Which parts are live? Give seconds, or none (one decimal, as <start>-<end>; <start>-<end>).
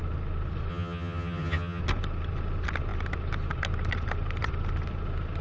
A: 0.0-0.7; 1.8-5.4